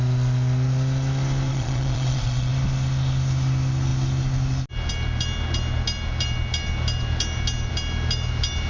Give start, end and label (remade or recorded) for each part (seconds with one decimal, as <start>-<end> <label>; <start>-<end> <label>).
0.0-1.5 recorded; 1.5-2.5 remade; 2.5-8.7 recorded